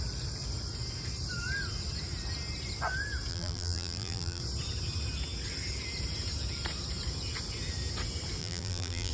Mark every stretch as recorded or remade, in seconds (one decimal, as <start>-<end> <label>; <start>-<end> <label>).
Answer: 0.0-3.3 recorded; 3.3-4.4 remade; 4.4-8.4 recorded; 8.4-9.1 remade